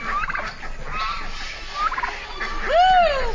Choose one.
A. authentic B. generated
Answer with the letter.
A